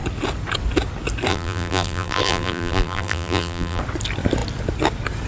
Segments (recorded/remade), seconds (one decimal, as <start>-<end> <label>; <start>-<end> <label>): 0.0-1.3 recorded; 1.3-3.8 remade; 3.8-5.3 recorded